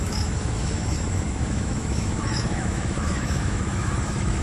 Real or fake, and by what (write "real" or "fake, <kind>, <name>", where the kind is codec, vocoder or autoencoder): fake, autoencoder, DAC-VAE